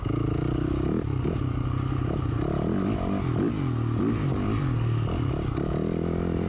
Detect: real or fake real